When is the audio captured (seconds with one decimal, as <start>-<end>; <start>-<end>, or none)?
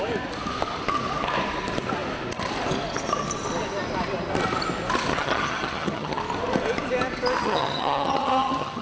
0.0-5.1; 6.2-7.4